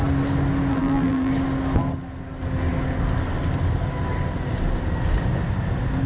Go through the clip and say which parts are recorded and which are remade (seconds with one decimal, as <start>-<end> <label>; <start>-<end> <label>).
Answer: 0.0-0.7 recorded; 0.7-1.3 remade; 1.3-6.1 recorded

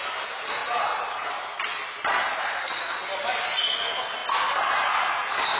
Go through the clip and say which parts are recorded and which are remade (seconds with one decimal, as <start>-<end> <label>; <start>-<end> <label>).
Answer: 0.0-0.6 recorded; 0.6-1.3 remade; 1.3-5.6 recorded

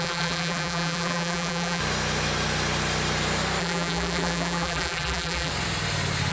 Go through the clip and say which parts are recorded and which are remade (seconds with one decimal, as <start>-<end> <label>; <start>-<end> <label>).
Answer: 0.0-1.8 remade; 1.8-3.6 recorded; 3.6-5.5 remade; 5.5-6.3 recorded

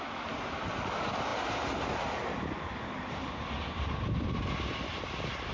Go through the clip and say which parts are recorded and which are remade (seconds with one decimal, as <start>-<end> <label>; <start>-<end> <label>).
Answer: 0.0-3.2 recorded; 3.2-4.0 remade; 4.0-5.5 recorded

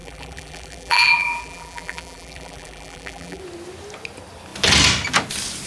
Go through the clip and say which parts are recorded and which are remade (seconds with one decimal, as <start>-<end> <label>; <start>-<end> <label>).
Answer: 0.0-3.4 remade; 3.4-5.7 recorded

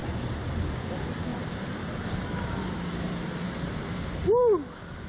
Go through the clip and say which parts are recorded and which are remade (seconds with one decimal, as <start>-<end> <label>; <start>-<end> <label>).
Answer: 0.0-1.3 recorded; 1.3-4.4 remade; 4.4-5.1 recorded

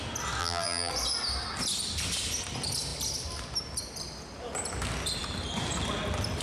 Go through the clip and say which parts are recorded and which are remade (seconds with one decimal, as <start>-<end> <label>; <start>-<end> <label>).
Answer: 0.0-0.4 recorded; 0.4-0.9 remade; 0.9-6.4 recorded

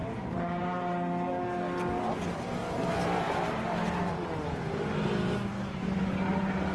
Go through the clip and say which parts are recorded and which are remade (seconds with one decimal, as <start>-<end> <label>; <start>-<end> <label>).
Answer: 0.0-0.6 remade; 0.6-6.7 recorded